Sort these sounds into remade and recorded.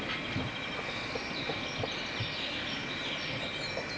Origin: recorded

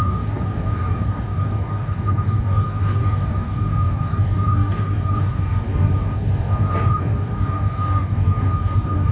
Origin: remade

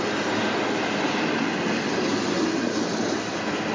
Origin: recorded